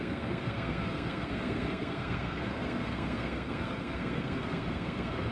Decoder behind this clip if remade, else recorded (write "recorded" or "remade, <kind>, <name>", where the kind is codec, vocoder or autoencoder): remade, codec, SNAC